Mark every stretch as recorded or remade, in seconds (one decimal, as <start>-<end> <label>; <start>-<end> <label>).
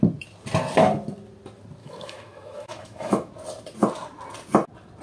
0.0-1.8 recorded; 1.8-3.3 remade; 3.3-5.0 recorded